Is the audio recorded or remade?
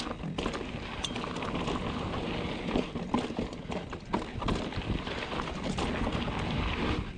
recorded